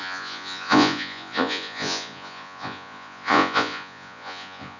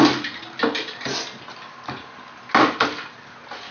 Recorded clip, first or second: second